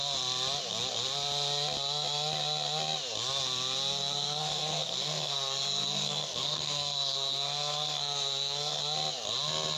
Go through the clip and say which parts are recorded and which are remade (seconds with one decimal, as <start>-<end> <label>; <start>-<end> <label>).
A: 0.0-4.0 recorded; 4.0-8.8 remade; 8.8-9.8 recorded